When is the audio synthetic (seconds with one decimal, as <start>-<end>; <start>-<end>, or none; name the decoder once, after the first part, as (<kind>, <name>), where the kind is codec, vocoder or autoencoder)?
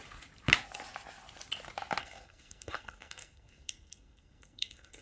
2.0-5.0 (codec, SNAC)